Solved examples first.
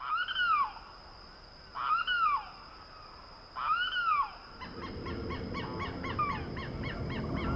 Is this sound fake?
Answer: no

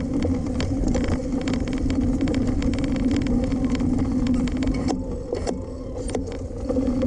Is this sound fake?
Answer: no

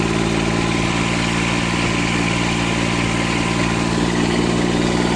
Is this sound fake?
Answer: no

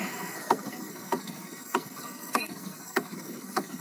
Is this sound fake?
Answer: yes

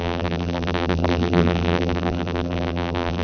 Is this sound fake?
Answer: yes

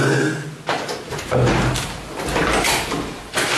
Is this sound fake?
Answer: no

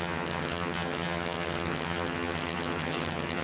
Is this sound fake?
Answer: yes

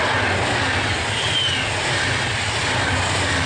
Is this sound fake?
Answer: no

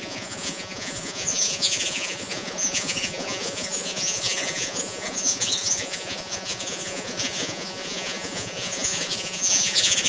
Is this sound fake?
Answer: yes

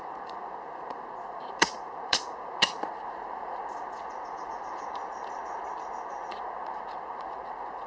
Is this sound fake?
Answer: yes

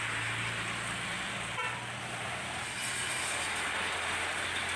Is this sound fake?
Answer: no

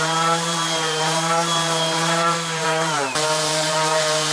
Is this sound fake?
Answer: yes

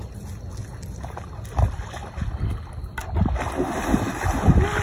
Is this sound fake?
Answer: no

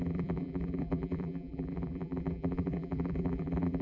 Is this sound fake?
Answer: yes